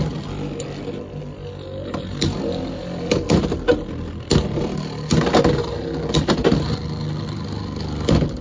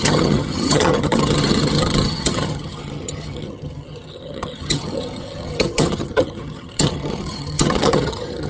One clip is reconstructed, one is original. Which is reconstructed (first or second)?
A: second